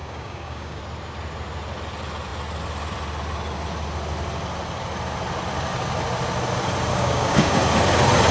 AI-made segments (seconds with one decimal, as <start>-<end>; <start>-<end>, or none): 0.0-0.8; 6.9-7.6